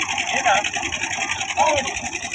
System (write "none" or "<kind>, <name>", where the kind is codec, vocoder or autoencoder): none